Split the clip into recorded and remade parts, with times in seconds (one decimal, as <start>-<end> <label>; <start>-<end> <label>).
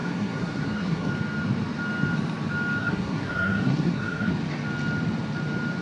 0.0-1.1 remade; 1.1-2.8 recorded; 2.8-4.3 remade; 4.3-5.8 recorded